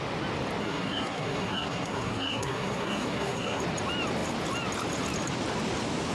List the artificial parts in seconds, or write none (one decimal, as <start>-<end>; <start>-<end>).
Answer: 0.6-3.6